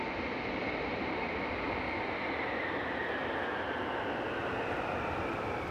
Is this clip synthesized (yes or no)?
yes